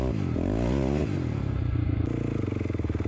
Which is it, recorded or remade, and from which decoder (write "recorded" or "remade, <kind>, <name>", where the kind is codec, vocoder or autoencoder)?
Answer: recorded